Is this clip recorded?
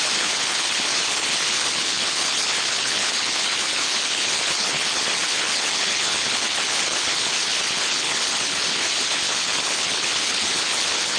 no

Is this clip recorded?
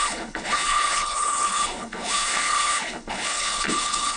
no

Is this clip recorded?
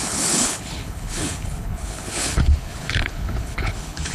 no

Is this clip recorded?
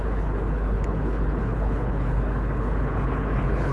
no